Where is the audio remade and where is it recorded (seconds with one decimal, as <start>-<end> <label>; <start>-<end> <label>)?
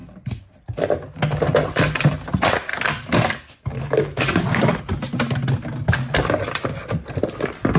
0.0-2.7 recorded; 2.7-4.8 remade; 4.8-7.8 recorded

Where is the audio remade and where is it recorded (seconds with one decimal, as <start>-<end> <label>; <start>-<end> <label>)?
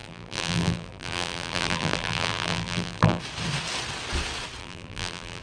0.0-3.2 remade; 3.2-4.6 recorded; 4.6-5.4 remade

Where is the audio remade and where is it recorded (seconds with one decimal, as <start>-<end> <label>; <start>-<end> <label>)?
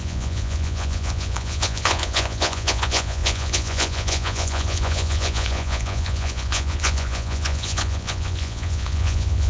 0.0-9.5 remade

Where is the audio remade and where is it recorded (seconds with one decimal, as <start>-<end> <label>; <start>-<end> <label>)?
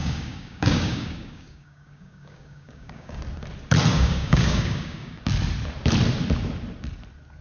0.0-3.2 remade; 3.2-3.9 recorded; 3.9-5.2 remade; 5.2-7.4 recorded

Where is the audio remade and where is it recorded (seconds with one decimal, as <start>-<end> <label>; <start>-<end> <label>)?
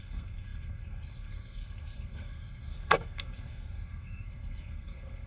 0.0-5.3 remade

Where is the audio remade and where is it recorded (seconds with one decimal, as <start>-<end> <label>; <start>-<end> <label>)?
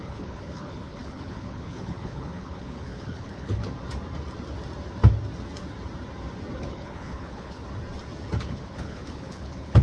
0.0-3.6 remade; 3.6-6.7 recorded; 6.7-7.6 remade; 7.6-8.4 recorded; 8.4-9.8 remade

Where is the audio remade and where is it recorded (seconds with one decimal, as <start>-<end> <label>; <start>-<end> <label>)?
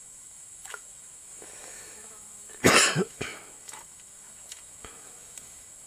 0.0-5.9 remade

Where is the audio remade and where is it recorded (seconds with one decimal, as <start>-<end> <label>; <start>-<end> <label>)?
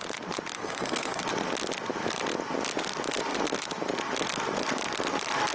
0.0-0.5 recorded; 0.5-1.2 remade; 1.2-5.5 recorded